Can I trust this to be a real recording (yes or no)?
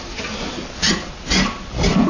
yes